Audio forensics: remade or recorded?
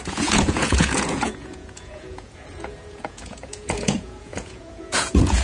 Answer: remade